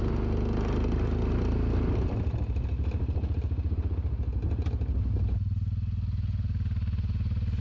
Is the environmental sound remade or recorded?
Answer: recorded